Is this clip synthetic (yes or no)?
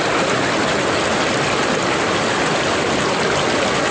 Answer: no